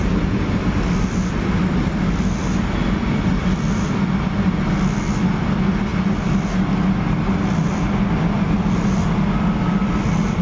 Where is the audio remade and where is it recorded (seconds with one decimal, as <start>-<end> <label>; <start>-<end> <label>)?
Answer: 0.0-10.4 recorded